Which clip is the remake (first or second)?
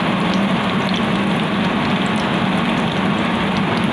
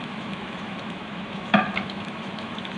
second